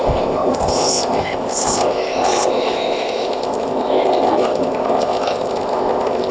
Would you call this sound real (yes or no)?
no